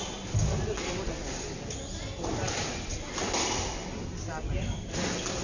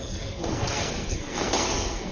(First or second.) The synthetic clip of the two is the second